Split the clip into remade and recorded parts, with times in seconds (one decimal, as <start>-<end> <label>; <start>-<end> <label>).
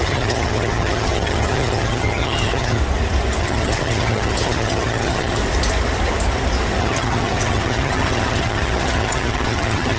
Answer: 0.0-2.8 remade; 2.8-3.4 recorded; 3.4-5.4 remade; 5.4-6.8 recorded; 6.8-10.0 remade